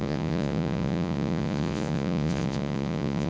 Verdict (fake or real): fake